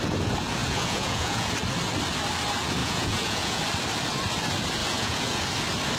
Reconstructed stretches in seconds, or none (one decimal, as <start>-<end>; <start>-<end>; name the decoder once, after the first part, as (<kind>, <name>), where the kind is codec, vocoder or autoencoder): 0.6-1.5 (vocoder, Vocos); 2.8-3.6; 4.8-5.4